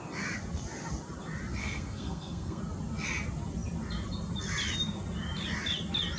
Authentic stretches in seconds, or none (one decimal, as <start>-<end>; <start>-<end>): 0.0-1.6; 2.6-6.2